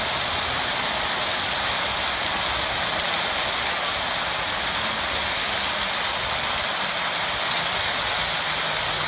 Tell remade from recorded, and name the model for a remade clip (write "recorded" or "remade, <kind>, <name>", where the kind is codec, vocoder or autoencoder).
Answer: recorded